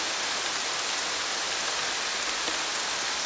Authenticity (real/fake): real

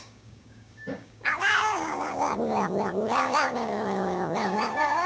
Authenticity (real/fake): fake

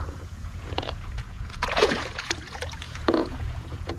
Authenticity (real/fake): fake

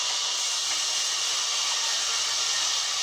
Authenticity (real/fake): real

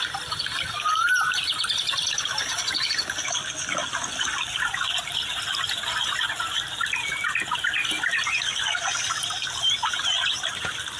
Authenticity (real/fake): real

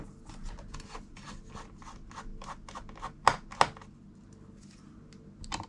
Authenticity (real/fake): real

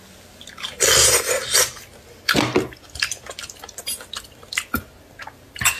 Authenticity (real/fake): real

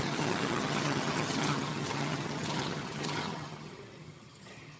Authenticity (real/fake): fake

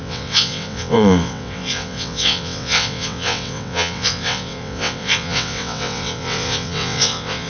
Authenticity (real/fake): fake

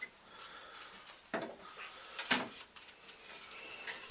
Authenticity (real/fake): real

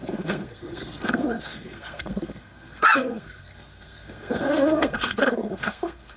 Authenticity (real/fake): fake